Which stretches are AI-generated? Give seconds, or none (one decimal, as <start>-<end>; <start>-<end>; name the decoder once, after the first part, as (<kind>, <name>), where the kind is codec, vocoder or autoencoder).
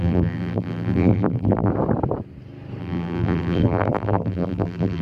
0.0-1.7 (vocoder, BigVGAN v2); 2.8-5.0